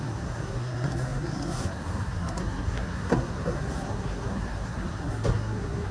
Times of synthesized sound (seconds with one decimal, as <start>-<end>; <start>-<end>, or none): 0.0-5.9